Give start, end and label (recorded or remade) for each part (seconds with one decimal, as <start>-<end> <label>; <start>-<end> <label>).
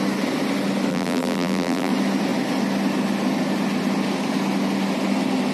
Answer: 0.0-0.9 recorded; 0.9-1.9 remade; 1.9-5.5 recorded